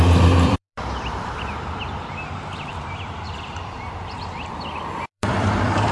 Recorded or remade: remade